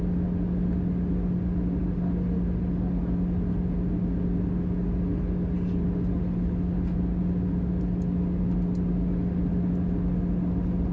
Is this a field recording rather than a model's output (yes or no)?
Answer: yes